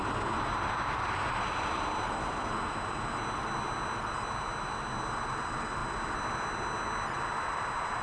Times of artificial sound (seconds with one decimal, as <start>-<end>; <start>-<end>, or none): none

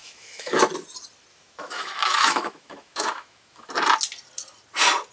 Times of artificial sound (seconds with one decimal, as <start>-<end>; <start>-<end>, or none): 0.0-0.6; 1.3-3.7

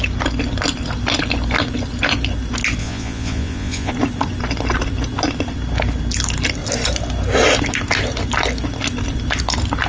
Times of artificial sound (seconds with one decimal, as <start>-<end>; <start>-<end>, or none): 2.8-3.9